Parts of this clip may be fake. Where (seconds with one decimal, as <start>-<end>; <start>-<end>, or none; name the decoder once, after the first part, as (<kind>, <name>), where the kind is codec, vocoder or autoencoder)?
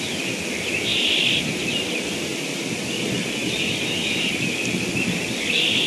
2.3-4.6 (vocoder, BigVGAN v2)